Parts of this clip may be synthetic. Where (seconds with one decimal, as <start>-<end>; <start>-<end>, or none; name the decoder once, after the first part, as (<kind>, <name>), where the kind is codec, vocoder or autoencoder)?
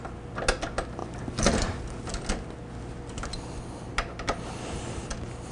none